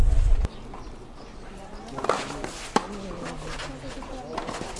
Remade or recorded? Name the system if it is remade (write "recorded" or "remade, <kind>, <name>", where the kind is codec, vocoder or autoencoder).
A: recorded